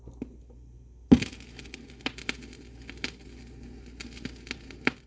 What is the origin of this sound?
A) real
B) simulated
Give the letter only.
A